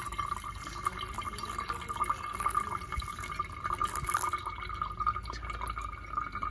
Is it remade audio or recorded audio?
recorded